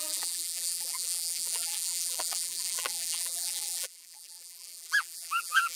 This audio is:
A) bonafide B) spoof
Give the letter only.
B